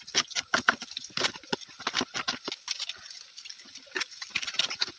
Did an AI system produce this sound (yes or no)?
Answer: no